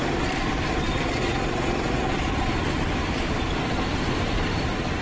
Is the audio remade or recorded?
remade